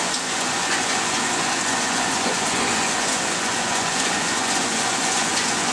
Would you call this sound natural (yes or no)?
no